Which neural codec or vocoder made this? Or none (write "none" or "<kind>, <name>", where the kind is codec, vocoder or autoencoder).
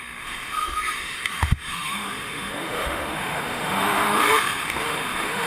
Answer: autoencoder, DAC-VAE